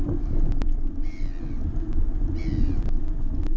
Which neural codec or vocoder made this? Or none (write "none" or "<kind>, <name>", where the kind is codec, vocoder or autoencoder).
none